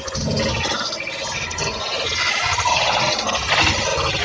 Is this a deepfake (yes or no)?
no